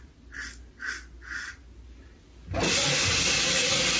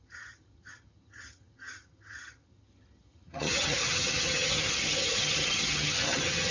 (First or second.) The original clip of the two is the first